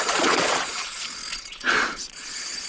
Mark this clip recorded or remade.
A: remade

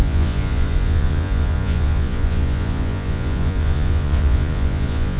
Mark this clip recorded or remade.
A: remade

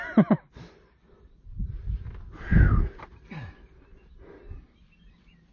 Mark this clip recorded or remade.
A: recorded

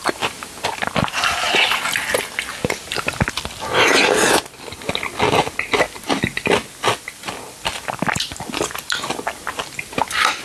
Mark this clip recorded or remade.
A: recorded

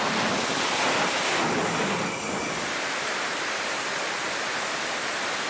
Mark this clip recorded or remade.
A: recorded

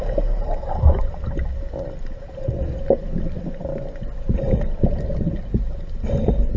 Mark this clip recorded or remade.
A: recorded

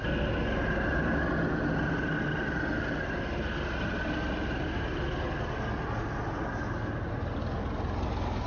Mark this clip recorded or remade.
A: recorded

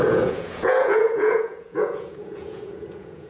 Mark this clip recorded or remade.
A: remade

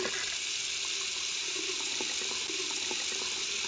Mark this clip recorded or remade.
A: recorded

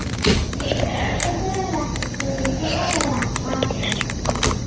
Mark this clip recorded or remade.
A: recorded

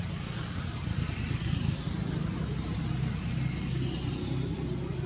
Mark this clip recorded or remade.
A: recorded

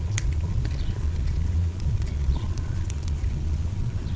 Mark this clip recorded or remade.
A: remade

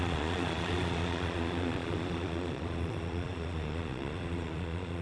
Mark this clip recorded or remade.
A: remade